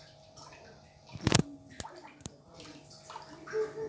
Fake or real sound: real